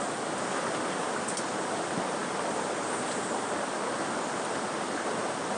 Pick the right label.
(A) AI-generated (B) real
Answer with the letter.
B